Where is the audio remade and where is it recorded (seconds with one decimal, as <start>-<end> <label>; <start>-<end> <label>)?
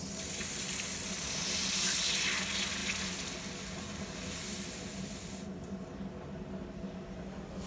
0.0-7.7 recorded